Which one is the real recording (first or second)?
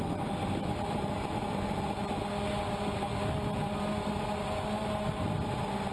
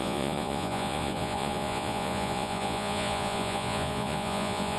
first